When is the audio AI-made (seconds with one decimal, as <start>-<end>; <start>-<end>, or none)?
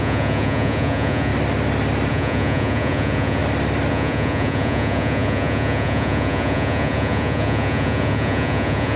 0.0-1.3; 2.1-3.4; 3.9-9.0